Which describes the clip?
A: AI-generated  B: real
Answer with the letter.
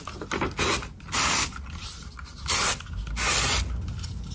B